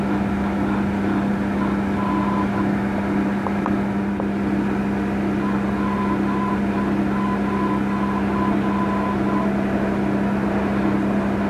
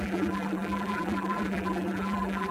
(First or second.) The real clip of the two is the first